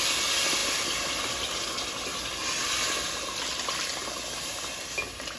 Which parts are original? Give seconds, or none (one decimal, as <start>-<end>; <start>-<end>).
0.0-5.4